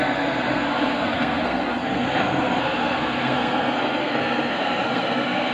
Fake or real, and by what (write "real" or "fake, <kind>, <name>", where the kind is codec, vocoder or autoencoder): fake, codec, SNAC